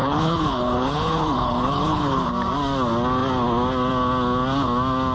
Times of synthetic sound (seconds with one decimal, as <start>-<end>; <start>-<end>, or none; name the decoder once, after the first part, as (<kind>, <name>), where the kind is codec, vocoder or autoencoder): 0.0-2.3 (codec, HILCodec)